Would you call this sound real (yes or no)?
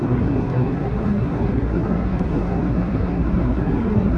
no